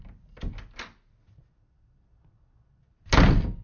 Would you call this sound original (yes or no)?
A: yes